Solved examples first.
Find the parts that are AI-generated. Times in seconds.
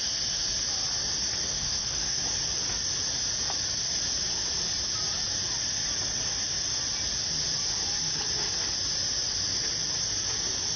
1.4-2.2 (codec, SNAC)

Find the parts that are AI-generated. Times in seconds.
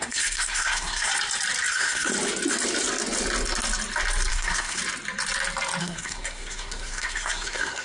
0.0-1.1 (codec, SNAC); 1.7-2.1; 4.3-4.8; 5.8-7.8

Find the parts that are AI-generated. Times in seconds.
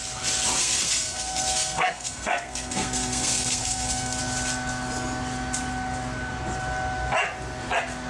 0.6-4.2 (codec, SNAC)